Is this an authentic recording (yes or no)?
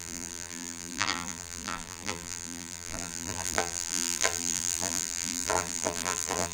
no